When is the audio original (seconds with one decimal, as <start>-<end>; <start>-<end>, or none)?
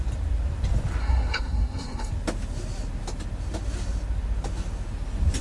0.0-1.0; 2.1-5.4